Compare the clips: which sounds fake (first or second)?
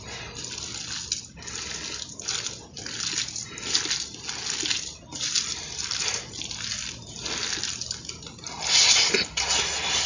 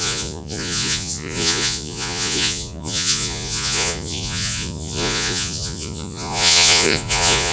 second